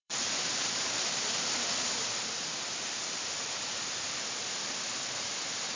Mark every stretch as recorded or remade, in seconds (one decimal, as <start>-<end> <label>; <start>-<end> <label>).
0.0-1.7 remade; 1.7-5.8 recorded